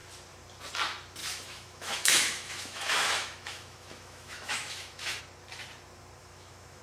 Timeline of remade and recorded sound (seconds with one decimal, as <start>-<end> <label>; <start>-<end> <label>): 0.0-1.2 recorded; 1.2-5.2 remade; 5.2-6.2 recorded; 6.2-6.8 remade